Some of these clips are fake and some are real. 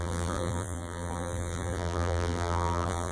fake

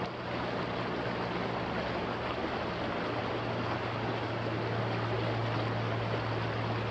real